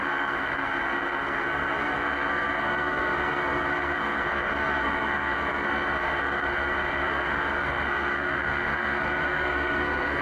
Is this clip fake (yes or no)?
yes